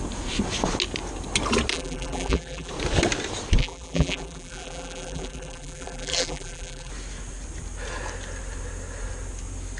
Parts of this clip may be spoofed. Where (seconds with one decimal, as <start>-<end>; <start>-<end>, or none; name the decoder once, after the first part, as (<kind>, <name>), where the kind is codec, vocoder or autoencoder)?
1.7-2.7 (vocoder, BigVGAN v2); 3.6-6.9